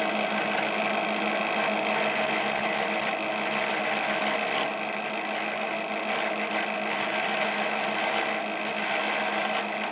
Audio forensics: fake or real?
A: real